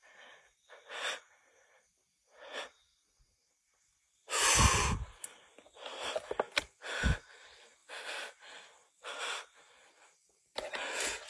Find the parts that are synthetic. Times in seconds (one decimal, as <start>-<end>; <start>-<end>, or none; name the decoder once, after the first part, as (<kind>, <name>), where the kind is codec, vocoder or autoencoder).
none